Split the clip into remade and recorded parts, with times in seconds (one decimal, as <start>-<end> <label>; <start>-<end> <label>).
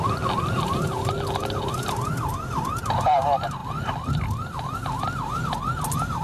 0.0-0.7 recorded; 0.7-1.6 remade; 1.6-6.2 recorded